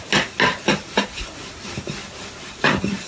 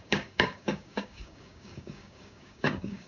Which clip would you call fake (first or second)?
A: second